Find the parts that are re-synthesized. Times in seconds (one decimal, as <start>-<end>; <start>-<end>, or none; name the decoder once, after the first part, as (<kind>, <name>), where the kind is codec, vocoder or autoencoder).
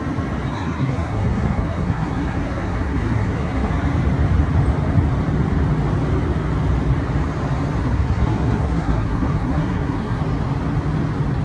0.5-3.7 (codec, SNAC); 7.8-10.2